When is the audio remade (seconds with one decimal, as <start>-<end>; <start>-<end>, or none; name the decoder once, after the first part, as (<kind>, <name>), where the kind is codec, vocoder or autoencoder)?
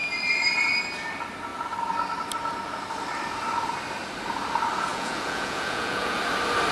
4.9-6.2 (vocoder, Vocos)